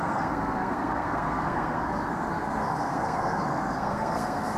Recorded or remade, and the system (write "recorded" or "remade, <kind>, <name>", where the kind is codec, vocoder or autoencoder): remade, codec, SNAC